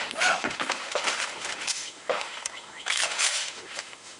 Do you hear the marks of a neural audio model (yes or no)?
yes